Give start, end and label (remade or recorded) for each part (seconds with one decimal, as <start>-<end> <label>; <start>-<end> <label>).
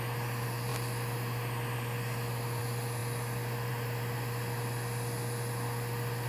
0.0-6.3 recorded